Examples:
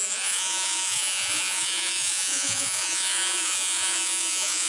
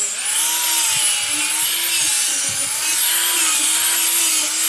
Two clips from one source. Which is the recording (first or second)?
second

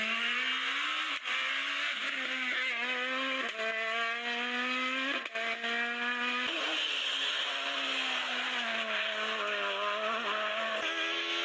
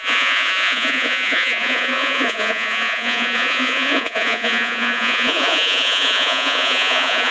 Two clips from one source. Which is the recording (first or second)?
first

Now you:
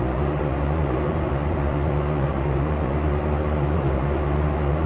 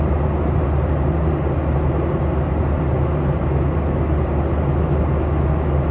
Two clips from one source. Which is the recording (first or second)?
second